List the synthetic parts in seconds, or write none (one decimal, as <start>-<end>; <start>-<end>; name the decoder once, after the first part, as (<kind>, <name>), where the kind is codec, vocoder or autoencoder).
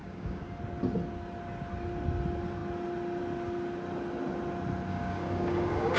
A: 0.0-0.6 (codec, DAC); 4.9-6.0